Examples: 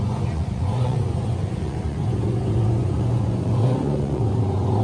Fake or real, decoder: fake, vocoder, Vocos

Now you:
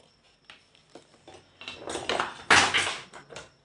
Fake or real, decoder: real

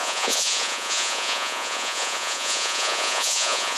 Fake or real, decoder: fake, vocoder, Vocos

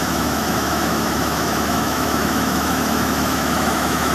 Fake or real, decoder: fake, autoencoder, DAC-VAE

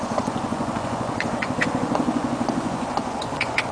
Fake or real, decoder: fake, vocoder, Vocos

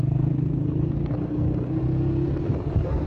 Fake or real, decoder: fake, codec, SNAC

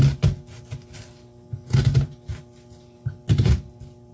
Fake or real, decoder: real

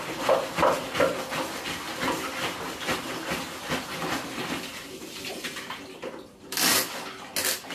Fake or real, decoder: real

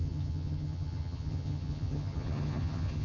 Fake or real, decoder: fake, vocoder, HiFi-GAN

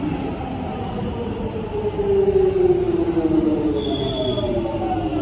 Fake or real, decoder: real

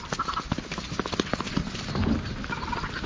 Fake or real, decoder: real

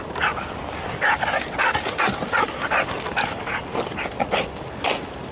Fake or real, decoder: real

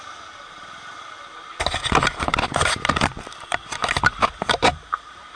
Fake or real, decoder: real